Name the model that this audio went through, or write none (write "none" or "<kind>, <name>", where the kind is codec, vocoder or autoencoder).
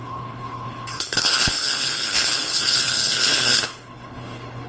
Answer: codec, HILCodec